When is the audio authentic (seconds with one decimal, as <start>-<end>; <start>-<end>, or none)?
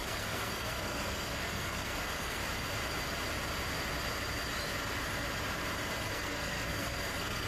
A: 2.4-6.1